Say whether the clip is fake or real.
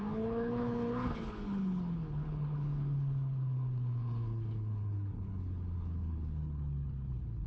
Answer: fake